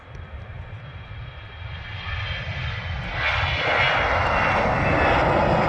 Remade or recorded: recorded